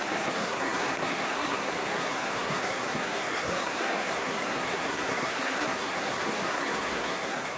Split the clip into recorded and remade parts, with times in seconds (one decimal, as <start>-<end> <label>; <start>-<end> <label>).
0.0-7.6 remade